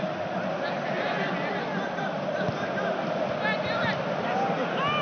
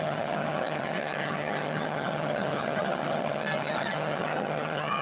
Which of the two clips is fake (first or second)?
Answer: second